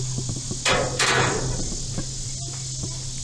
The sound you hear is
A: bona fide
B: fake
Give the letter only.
A